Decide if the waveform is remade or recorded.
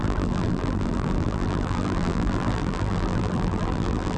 remade